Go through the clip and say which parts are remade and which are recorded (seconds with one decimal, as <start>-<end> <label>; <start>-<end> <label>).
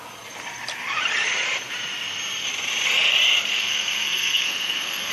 0.0-3.5 recorded; 3.5-5.1 remade